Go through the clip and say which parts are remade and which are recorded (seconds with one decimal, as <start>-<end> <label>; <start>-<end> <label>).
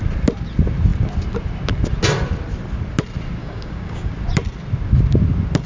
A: 0.0-3.4 recorded; 3.4-4.1 remade; 4.1-5.7 recorded